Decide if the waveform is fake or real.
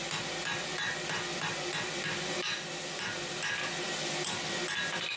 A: real